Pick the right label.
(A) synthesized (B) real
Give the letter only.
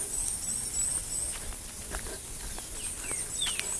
B